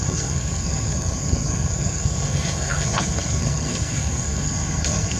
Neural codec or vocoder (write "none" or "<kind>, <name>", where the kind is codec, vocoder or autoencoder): codec, SNAC